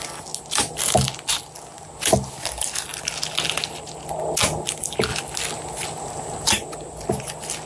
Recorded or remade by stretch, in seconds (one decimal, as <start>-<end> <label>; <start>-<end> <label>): 0.0-7.7 recorded